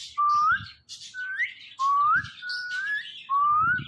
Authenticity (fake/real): real